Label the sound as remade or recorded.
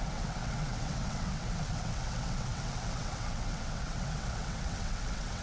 remade